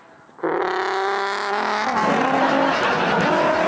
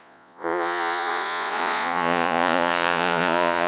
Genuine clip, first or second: first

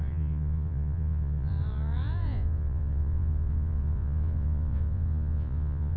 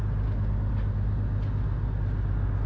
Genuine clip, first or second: second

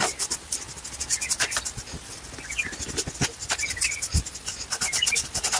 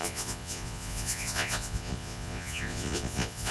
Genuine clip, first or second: first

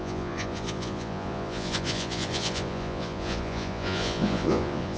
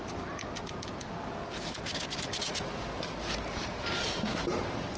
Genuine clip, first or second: second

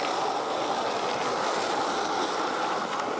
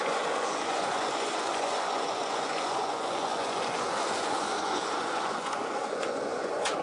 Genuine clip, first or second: first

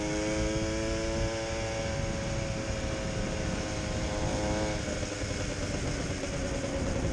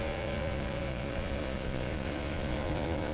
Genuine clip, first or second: first